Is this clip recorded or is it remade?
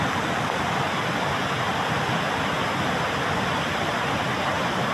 recorded